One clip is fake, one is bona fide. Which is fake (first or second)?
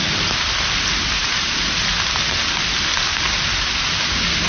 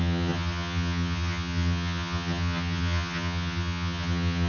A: second